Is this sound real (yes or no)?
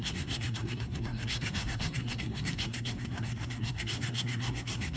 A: no